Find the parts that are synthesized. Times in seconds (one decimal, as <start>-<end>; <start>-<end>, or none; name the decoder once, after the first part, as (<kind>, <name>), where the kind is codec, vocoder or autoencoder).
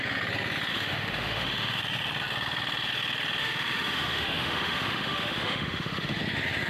0.7-1.8 (autoencoder, DAC-VAE); 3.4-6.2